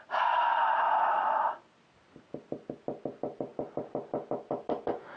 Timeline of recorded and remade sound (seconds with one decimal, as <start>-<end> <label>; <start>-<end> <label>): 0.0-5.2 recorded